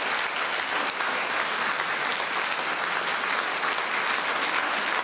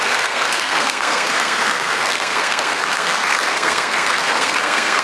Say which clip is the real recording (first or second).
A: first